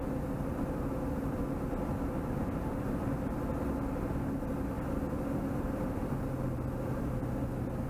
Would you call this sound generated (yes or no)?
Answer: no